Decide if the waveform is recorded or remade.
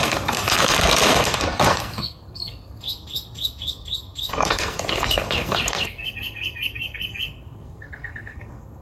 remade